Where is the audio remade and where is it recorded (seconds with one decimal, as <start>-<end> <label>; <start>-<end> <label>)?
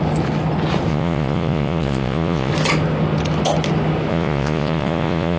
0.0-0.9 recorded; 0.9-2.5 remade; 2.5-4.1 recorded; 4.1-5.4 remade